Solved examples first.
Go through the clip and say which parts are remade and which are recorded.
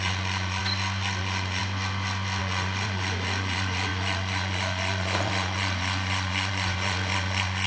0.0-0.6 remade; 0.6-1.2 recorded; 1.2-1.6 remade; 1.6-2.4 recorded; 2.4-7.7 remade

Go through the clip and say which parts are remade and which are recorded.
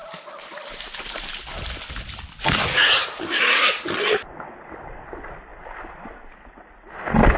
0.0-7.4 recorded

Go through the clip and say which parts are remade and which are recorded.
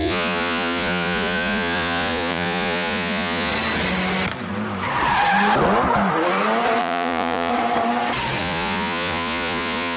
0.0-3.5 remade; 3.5-6.8 recorded; 6.8-7.5 remade; 7.5-8.4 recorded; 8.4-10.0 remade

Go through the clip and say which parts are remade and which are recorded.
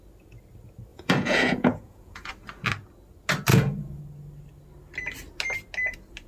0.0-0.9 recorded; 0.9-2.3 remade; 2.3-3.5 recorded; 3.5-4.0 remade; 4.0-6.3 recorded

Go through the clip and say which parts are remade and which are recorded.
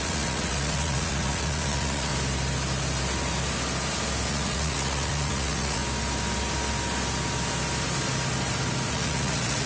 0.0-2.1 remade; 2.1-4.3 recorded; 4.3-5.8 remade; 5.8-8.9 recorded; 8.9-9.7 remade